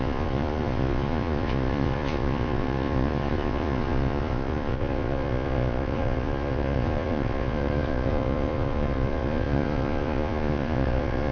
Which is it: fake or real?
fake